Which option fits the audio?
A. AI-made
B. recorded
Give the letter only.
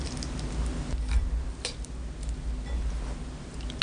B